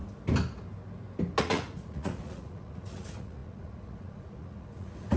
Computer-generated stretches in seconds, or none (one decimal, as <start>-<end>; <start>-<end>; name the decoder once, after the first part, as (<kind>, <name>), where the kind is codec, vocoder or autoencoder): 1.4-5.2 (vocoder, Vocos)